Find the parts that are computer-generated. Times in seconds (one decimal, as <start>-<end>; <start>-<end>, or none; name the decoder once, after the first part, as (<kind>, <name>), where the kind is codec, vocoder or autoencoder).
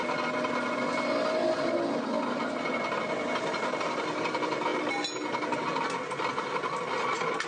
none